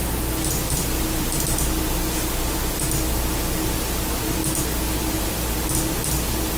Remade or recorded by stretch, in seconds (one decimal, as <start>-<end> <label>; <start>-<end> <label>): 0.0-6.6 recorded